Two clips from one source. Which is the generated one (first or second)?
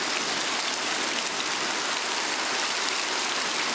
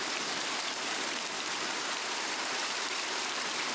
second